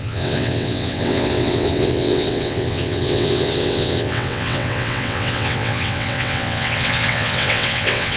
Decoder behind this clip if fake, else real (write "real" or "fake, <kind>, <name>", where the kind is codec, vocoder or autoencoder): fake, vocoder, WaveNeXt